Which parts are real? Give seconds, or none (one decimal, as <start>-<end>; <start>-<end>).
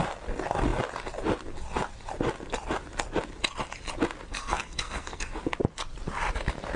0.0-4.3; 5.4-6.8